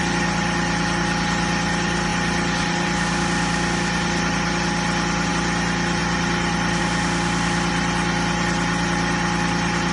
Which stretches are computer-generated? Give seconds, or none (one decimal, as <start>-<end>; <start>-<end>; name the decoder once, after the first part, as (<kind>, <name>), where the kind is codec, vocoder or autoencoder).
none